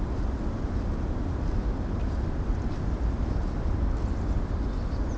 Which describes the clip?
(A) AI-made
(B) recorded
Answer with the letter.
B